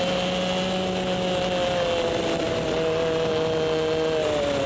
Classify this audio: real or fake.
real